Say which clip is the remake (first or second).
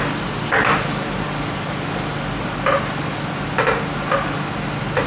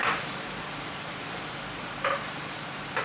second